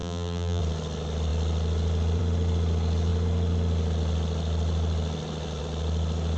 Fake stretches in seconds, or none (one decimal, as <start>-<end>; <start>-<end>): 0.0-0.6